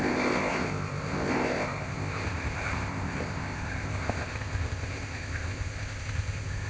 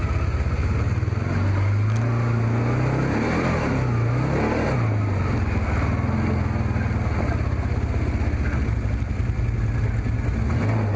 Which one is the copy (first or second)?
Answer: first